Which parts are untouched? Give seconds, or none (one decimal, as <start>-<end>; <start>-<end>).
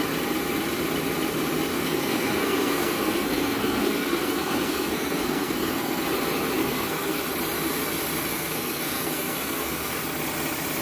0.0-1.7; 6.0-6.6; 7.2-8.3; 10.0-10.8